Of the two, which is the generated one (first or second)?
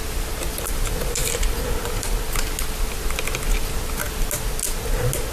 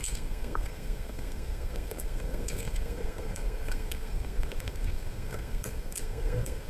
second